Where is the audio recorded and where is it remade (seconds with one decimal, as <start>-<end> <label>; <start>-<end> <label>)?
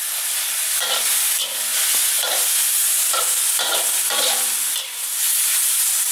0.0-6.1 recorded